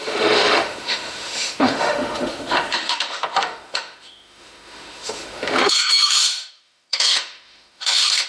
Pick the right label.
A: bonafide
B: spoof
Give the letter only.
B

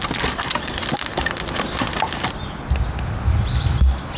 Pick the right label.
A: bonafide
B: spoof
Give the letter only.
A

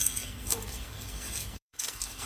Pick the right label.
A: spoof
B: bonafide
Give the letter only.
A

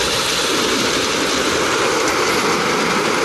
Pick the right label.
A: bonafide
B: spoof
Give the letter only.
A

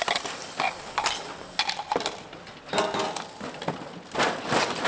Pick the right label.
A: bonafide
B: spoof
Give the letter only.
A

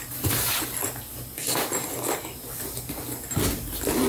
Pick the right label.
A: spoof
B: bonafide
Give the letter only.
B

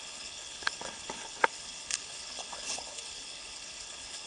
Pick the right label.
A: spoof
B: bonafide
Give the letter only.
A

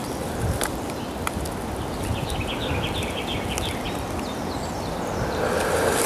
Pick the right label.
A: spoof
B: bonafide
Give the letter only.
B